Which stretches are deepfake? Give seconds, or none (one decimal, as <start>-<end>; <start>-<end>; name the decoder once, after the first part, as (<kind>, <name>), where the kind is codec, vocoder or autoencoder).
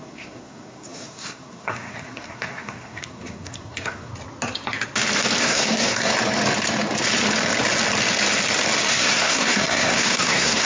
0.0-4.1 (codec, SNAC); 5.4-6.1; 8.9-10.7